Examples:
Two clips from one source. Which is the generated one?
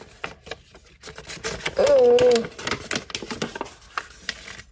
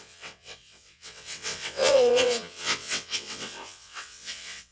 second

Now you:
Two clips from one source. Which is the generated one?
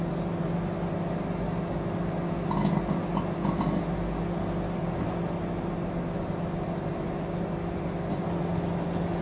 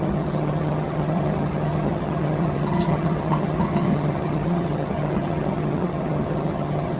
second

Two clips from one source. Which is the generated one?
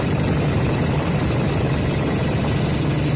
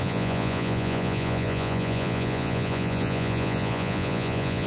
second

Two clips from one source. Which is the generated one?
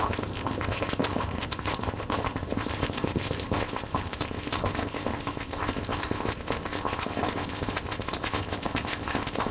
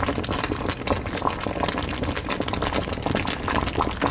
first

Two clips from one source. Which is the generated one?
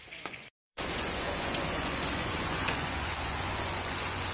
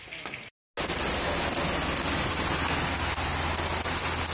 first